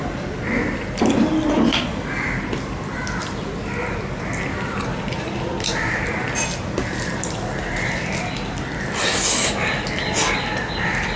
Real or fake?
real